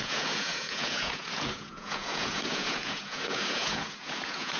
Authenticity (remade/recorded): remade